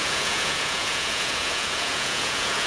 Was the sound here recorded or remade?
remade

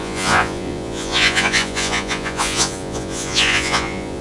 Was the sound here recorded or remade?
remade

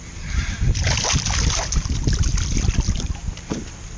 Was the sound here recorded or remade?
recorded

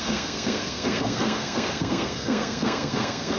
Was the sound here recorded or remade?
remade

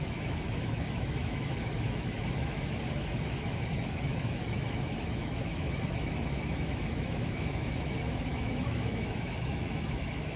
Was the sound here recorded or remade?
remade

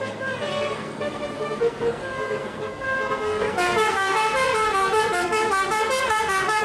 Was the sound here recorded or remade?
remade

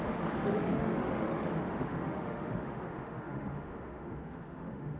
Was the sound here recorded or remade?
remade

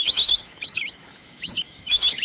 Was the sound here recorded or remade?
remade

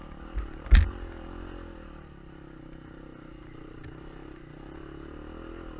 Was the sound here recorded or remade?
recorded